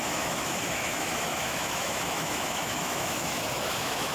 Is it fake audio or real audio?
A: fake